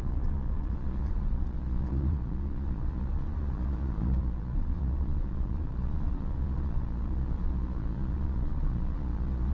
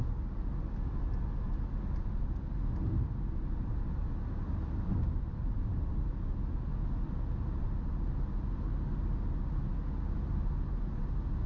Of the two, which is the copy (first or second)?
first